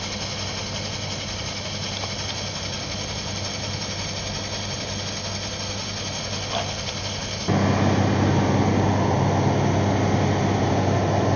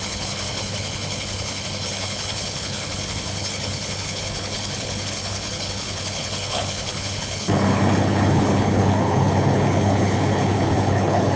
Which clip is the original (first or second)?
first